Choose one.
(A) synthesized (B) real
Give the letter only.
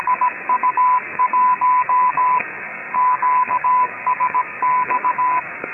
A